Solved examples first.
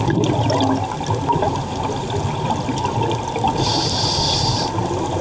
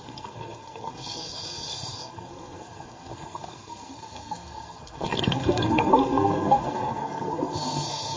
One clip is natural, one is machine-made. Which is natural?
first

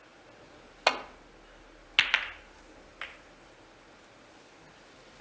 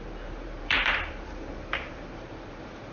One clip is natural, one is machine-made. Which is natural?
first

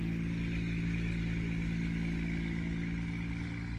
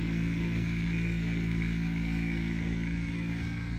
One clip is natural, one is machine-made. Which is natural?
first